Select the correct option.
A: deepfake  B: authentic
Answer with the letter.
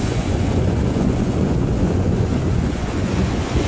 A